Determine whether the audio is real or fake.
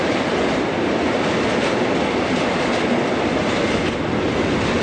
real